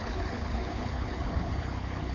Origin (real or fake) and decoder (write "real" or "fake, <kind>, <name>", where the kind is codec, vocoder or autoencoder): fake, codec, HILCodec